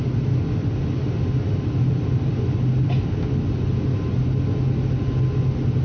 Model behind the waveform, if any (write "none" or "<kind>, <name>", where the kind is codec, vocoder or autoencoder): none